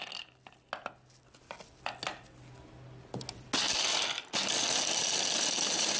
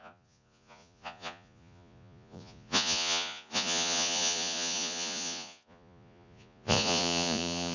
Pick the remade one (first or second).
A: second